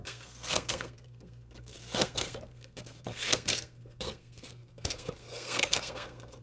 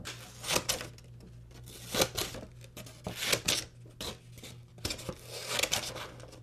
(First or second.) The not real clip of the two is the first